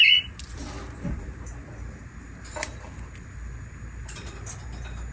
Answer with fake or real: real